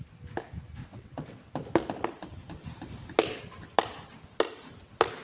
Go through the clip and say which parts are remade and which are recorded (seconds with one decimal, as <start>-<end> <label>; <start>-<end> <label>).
0.0-0.8 recorded; 0.8-1.5 remade; 1.5-5.2 recorded